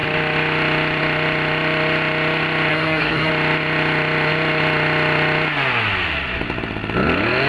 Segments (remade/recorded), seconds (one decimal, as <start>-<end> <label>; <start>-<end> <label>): 0.0-2.7 recorded; 2.7-3.3 remade; 3.3-7.5 recorded